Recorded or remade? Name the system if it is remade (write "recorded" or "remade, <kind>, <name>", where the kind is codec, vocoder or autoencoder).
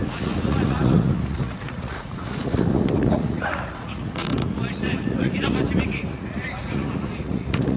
remade, vocoder, Vocos